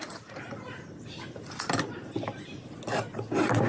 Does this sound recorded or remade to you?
recorded